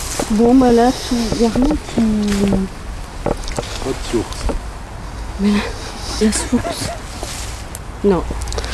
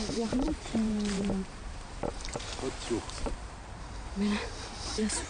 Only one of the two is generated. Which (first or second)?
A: second